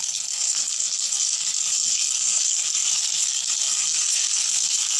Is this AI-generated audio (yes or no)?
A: yes